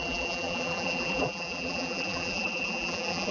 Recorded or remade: remade